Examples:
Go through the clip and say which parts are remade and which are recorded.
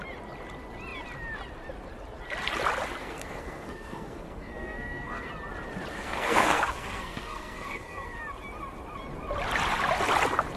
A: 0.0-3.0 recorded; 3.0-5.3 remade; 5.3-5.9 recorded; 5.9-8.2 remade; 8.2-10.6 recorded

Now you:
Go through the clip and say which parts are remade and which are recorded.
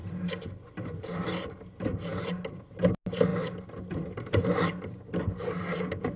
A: 0.0-6.2 recorded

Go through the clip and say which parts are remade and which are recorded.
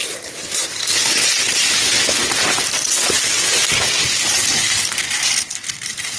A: 0.0-6.2 recorded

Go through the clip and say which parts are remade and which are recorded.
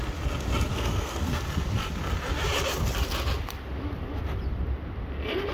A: 0.0-0.7 recorded; 0.7-1.4 remade; 1.4-5.5 recorded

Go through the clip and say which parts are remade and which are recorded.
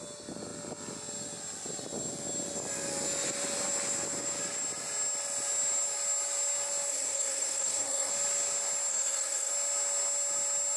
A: 0.0-6.9 recorded; 6.9-8.1 remade; 8.1-8.9 recorded; 8.9-9.5 remade; 9.5-10.8 recorded